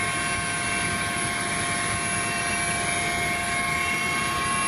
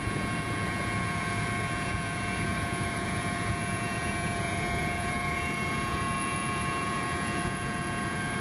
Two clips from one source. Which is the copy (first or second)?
second